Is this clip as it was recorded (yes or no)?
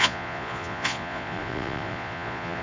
no